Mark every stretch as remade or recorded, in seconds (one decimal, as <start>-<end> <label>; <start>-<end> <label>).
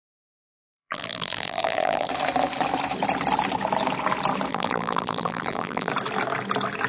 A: 0.0-2.1 remade; 2.1-4.5 recorded; 4.5-5.9 remade; 5.9-6.9 recorded